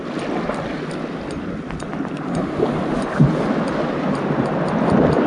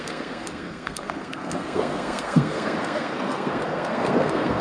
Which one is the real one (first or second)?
first